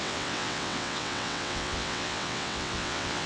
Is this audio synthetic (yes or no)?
yes